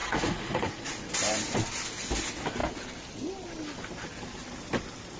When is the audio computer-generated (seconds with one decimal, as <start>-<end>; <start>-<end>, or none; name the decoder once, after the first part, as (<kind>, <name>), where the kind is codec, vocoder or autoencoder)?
0.0-0.9 (vocoder, Vocos)